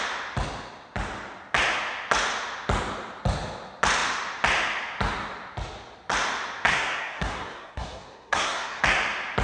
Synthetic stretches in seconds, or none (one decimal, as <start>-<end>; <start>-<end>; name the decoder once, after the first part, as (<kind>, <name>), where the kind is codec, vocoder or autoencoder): 6.7-8.8 (codec, SNAC)